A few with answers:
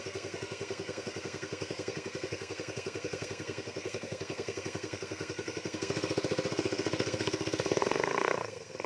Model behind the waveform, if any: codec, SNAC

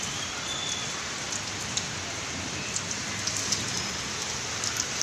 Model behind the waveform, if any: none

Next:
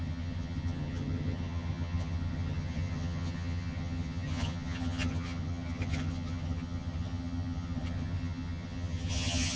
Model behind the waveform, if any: vocoder, HiFi-GAN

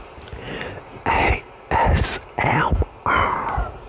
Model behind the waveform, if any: none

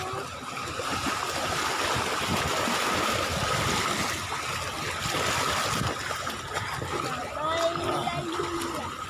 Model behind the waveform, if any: none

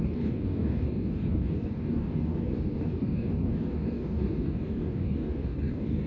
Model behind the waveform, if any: codec, DAC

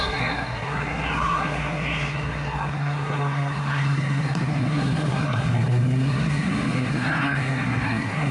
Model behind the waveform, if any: codec, SNAC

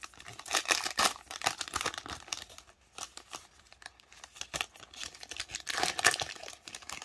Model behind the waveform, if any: vocoder, BigVGAN v2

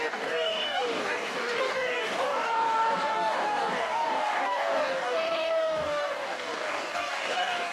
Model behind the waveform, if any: codec, DAC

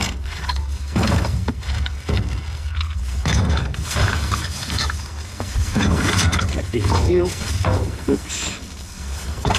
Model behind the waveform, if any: codec, SNAC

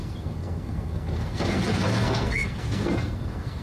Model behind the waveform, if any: codec, SNAC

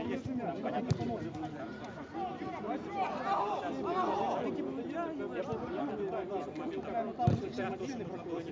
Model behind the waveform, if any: none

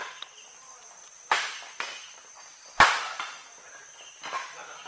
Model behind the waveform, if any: none